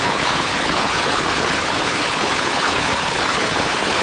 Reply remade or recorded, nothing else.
remade